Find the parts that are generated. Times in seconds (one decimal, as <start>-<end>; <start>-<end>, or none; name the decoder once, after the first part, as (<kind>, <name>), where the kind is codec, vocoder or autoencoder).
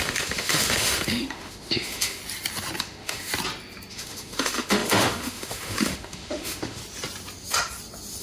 0.0-2.2 (autoencoder, DAC-VAE); 2.8-3.3; 3.9-6.8